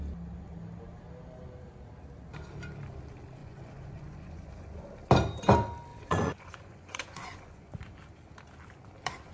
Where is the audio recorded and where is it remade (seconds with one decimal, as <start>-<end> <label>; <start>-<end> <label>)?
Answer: 0.0-3.4 recorded; 3.4-4.8 remade; 4.8-5.9 recorded; 5.9-7.8 remade; 7.8-9.3 recorded